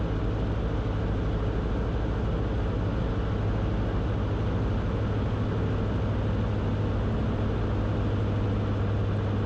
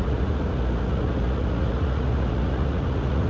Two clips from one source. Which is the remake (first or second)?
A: second